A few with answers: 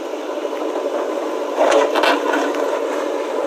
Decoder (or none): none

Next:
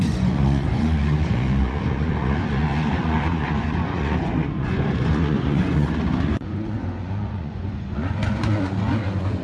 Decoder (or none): vocoder, Vocos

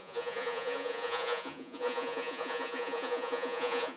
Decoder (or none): vocoder, Vocos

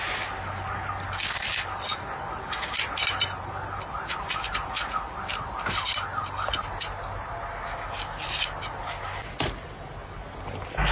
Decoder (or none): none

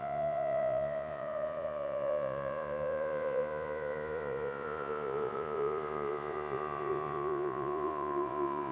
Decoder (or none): vocoder, Vocos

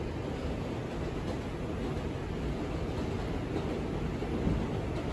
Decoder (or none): none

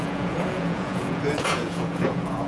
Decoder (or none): vocoder, Vocos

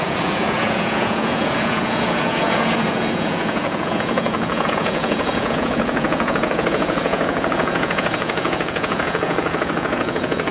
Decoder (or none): vocoder, Vocos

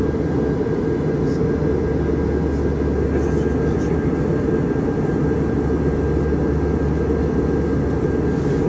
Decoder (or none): none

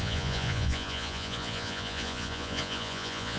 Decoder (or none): vocoder, Vocos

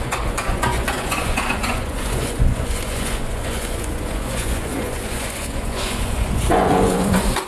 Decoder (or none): vocoder, Vocos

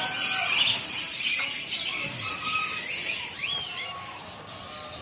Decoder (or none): none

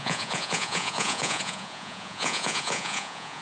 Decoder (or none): vocoder, Vocos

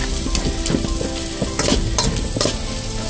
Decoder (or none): none